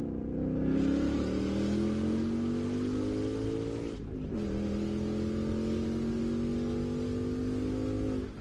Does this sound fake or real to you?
real